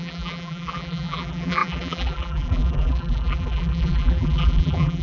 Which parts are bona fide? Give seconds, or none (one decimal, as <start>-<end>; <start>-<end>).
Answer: none